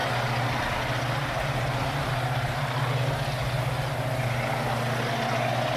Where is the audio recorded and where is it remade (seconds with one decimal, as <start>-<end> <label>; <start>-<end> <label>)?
0.0-5.8 recorded